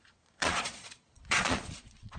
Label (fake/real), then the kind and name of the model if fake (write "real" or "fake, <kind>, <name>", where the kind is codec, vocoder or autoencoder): fake, vocoder, Vocos